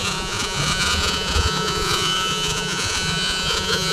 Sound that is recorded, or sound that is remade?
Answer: remade